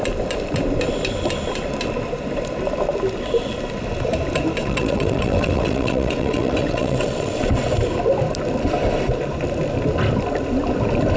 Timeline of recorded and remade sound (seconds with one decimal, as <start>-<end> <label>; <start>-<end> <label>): 0.0-4.6 recorded; 4.6-7.7 remade; 7.7-11.2 recorded